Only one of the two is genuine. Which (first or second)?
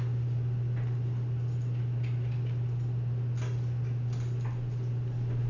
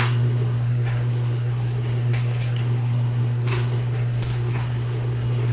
first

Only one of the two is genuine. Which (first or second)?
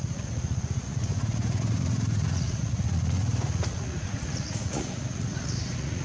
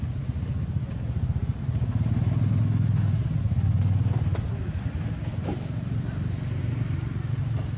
second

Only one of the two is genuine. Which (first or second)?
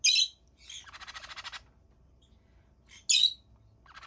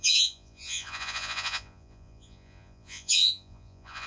first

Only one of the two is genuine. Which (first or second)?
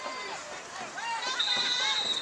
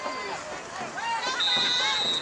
second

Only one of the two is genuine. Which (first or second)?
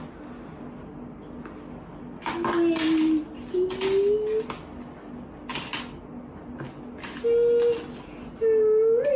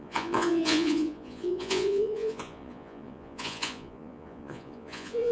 first